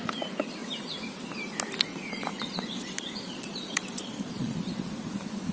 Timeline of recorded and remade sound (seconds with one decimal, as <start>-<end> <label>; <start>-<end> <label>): 0.0-1.9 recorded; 1.9-4.7 remade; 4.7-5.5 recorded